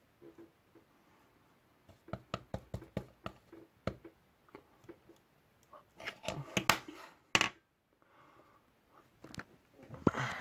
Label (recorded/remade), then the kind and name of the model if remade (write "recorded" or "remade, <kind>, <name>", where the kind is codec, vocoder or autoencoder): recorded